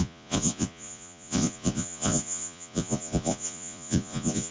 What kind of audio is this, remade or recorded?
remade